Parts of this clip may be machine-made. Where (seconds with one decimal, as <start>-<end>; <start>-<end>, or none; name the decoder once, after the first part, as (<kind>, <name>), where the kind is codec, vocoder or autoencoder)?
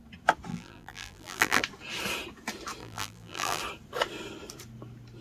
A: 0.5-1.6 (vocoder, BigVGAN v2); 2.8-3.6